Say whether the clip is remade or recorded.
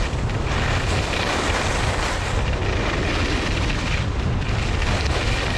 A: recorded